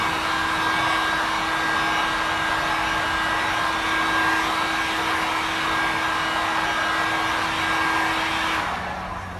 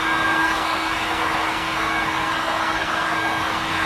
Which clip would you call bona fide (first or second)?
first